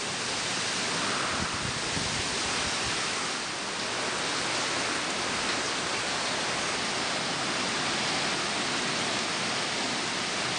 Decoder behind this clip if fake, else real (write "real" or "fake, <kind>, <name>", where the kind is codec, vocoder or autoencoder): real